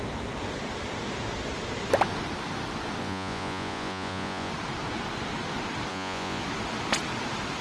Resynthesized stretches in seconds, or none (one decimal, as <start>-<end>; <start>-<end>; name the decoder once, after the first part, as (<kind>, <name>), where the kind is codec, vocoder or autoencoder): 3.0-4.5 (vocoder, Vocos); 5.9-6.4